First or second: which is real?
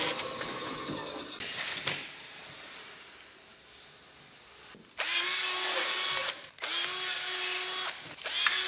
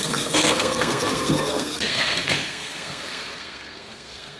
first